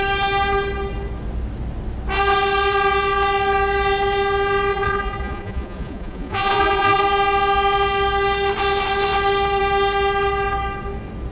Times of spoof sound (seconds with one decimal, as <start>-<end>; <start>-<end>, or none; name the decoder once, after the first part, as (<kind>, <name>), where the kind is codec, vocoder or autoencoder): 4.7-7.0 (vocoder, Vocos)